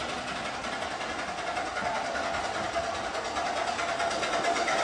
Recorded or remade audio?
recorded